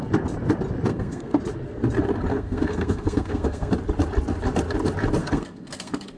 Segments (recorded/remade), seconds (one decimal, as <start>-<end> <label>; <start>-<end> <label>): 0.0-0.9 recorded; 0.9-1.4 remade; 1.4-2.3 recorded; 2.3-3.7 remade; 3.7-5.2 recorded; 5.2-6.2 remade